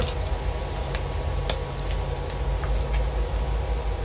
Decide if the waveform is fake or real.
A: real